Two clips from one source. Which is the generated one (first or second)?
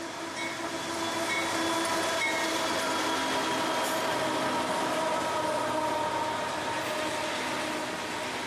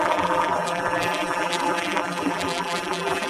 second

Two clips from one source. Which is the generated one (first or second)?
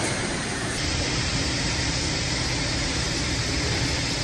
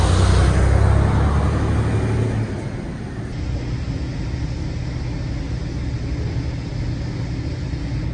first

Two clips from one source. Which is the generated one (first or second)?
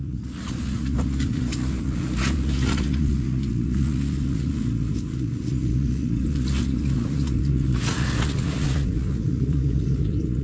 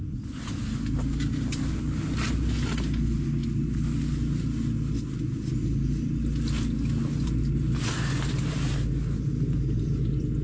first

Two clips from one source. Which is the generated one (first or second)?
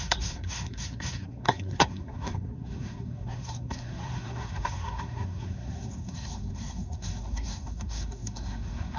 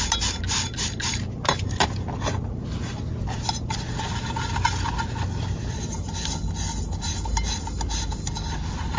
first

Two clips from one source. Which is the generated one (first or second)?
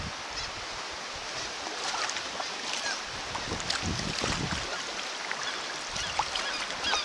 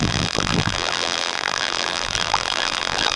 second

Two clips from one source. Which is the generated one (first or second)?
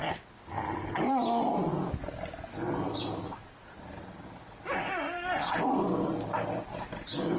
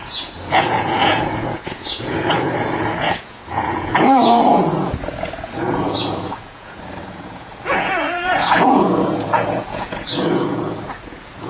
second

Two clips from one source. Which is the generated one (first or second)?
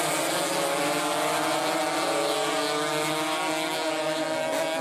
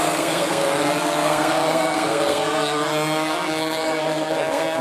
second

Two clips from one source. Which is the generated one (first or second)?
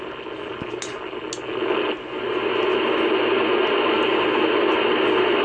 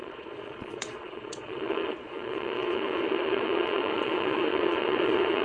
second